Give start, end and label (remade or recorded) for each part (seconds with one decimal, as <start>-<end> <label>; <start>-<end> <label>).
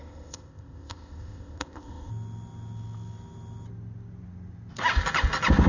0.0-2.1 remade; 2.1-5.7 recorded